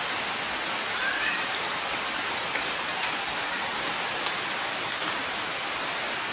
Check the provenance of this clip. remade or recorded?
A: recorded